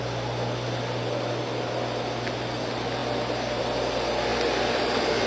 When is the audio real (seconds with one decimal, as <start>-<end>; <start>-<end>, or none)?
0.0-5.3